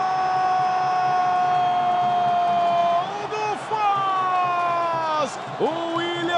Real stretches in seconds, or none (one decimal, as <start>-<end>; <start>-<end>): 0.0-6.4